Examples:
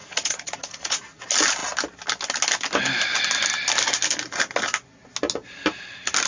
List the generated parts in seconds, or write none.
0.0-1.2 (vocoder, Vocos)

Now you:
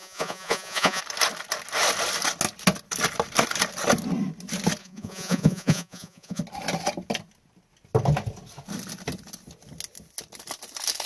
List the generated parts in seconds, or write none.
0.0-1.0 (vocoder, Vocos); 4.8-6.4

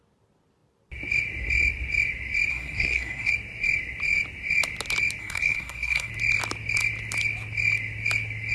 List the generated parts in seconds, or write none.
2.5-3.3 (codec, SNAC); 5.2-6.1

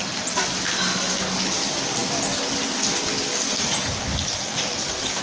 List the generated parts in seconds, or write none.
none

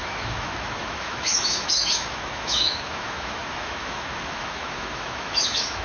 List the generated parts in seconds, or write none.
0.0-5.8 (autoencoder, DAC-VAE)

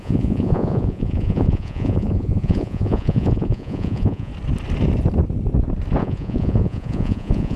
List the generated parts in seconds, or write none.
0.0-4.3 (vocoder, Vocos); 6.0-7.6